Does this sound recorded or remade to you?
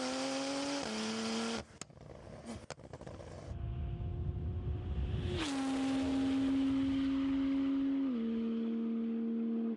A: recorded